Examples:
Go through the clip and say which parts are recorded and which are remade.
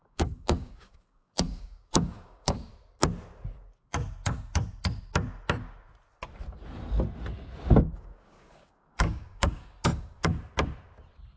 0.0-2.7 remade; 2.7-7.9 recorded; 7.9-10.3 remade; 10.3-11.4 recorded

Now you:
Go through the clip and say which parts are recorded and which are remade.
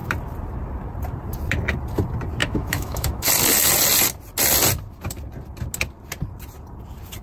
0.0-2.4 recorded; 2.4-3.3 remade; 3.3-7.2 recorded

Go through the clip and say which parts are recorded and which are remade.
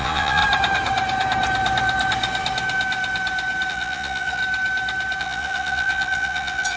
0.0-0.4 remade; 0.4-3.7 recorded; 3.7-4.4 remade; 4.4-5.2 recorded; 5.2-6.8 remade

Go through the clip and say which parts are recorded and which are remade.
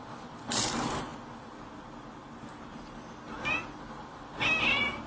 0.0-5.1 recorded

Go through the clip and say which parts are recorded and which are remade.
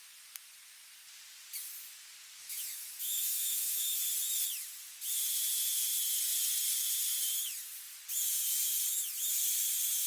0.0-2.4 recorded; 2.4-4.0 remade; 4.0-10.1 recorded